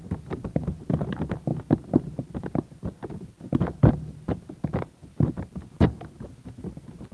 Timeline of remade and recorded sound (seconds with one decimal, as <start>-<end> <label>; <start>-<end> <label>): 0.0-7.1 remade